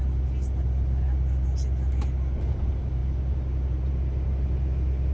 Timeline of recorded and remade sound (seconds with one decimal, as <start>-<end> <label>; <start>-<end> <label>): 0.0-5.1 recorded